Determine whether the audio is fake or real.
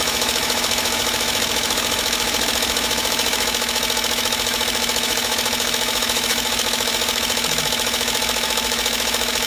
fake